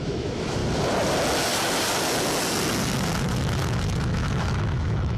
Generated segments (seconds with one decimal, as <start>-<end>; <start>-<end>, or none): 0.0-0.6; 3.7-5.2